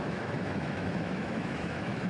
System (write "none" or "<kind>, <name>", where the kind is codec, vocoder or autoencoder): autoencoder, DAC-VAE